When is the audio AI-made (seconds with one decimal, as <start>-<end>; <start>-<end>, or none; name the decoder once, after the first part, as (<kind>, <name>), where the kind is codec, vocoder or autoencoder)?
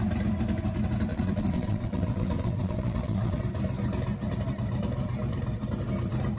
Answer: 1.1-3.4 (vocoder, WaveNeXt)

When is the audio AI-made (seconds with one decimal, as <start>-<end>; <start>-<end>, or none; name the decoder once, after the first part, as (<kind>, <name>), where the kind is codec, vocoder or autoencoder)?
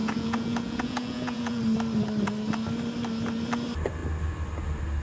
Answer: 0.0-1.6 (vocoder, Vocos)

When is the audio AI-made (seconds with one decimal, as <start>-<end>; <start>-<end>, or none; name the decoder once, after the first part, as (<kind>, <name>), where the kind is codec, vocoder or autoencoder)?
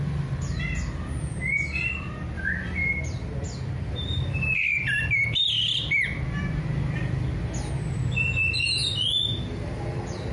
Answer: none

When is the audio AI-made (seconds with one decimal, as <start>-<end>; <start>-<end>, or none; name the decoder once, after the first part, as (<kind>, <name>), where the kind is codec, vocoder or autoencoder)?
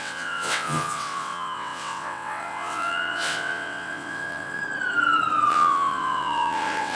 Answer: 0.0-4.6 (vocoder, WaveNeXt); 5.5-6.9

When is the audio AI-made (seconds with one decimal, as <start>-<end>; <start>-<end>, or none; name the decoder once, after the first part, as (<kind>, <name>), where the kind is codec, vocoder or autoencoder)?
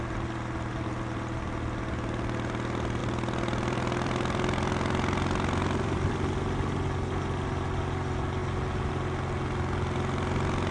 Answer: 3.0-6.1 (vocoder, BigVGAN v2)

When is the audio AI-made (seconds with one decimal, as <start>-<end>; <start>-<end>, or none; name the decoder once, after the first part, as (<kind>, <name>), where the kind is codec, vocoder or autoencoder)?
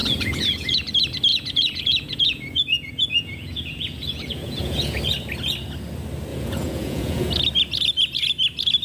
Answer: 0.0-0.9 (vocoder, Vocos); 1.3-5.0; 6.3-7.3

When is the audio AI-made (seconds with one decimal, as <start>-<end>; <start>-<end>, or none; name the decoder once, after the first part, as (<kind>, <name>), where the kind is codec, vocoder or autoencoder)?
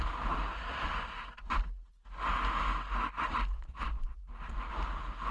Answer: 3.5-4.2 (vocoder, Vocos)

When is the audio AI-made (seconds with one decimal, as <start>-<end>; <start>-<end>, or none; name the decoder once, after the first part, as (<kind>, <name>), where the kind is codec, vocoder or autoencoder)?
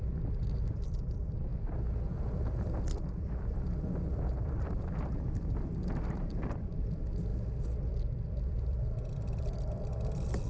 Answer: 0.0-7.3 (vocoder, BigVGAN v2); 7.8-10.5